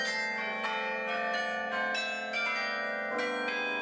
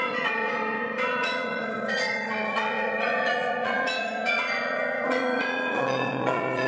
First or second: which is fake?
second